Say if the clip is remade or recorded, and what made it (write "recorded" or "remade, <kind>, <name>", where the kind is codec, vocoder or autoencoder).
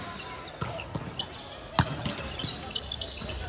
recorded